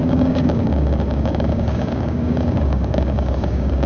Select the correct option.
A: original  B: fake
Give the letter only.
B